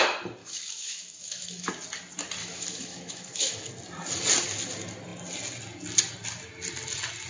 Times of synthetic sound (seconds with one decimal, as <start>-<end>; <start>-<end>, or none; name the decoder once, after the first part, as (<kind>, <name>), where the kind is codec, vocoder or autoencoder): 0.4-1.7 (autoencoder, DAC-VAE); 2.4-3.7